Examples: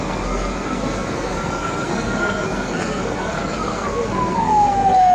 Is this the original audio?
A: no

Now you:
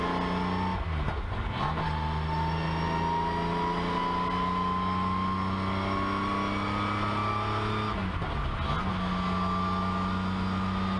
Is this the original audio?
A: yes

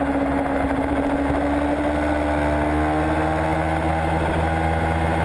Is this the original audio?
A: yes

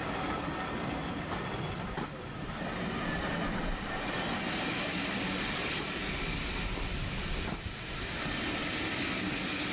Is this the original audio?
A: yes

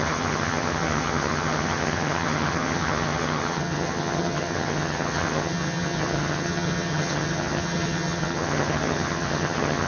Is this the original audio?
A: no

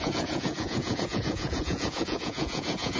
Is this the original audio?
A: no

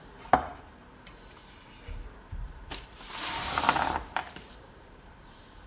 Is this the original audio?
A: no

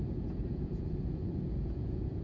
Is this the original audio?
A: no